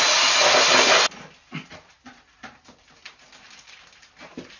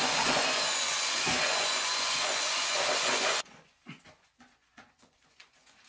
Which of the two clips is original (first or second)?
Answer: first